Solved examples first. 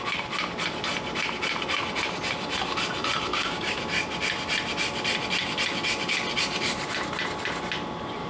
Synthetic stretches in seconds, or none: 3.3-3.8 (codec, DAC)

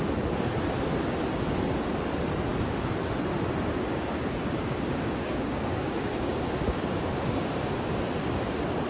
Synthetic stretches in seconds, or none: 4.4-7.9 (codec, DAC)